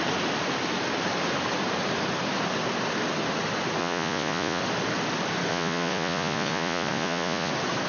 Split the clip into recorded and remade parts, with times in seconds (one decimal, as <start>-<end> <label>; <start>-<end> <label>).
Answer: 0.0-3.8 recorded; 3.8-4.6 remade; 4.6-5.5 recorded; 5.5-7.5 remade; 7.5-7.9 recorded